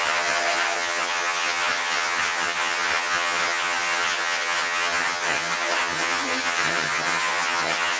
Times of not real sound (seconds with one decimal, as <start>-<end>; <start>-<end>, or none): 0.0-8.0